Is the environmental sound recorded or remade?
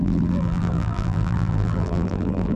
remade